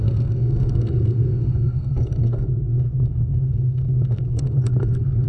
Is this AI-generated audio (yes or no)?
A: yes